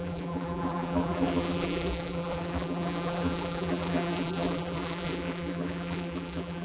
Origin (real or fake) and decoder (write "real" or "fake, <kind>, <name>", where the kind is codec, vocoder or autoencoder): fake, vocoder, BigVGAN v2